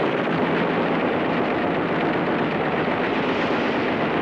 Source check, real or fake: real